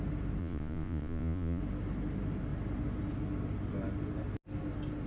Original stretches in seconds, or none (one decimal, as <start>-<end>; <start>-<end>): 0.0-0.4; 1.6-5.1